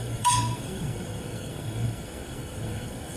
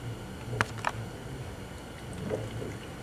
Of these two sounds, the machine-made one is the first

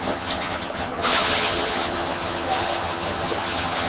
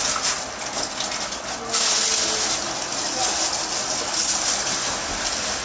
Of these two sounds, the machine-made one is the first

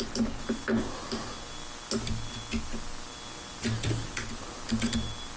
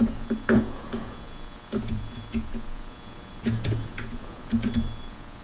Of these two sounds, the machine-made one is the second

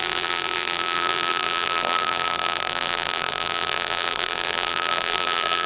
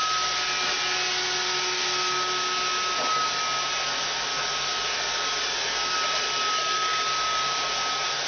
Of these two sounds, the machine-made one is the first